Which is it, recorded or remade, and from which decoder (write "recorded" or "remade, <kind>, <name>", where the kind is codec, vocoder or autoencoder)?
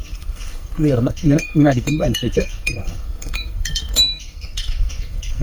remade, codec, SNAC